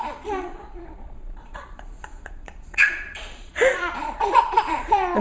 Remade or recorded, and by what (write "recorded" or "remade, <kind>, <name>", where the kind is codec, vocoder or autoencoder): remade, vocoder, Vocos